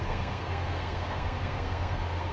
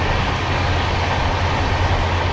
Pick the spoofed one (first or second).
first